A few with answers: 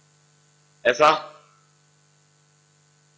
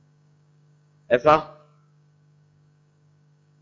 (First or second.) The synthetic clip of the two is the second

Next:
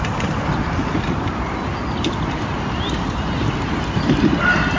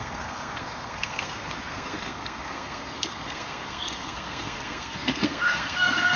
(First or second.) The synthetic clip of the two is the second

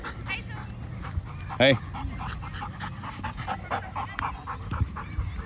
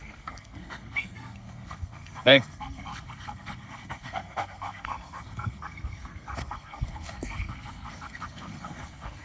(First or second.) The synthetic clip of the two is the second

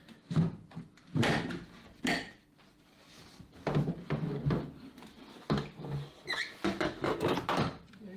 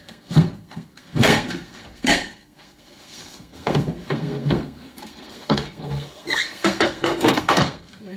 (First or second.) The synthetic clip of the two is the second